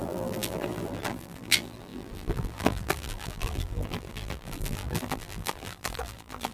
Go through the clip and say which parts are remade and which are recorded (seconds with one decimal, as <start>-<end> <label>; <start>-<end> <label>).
0.0-6.5 remade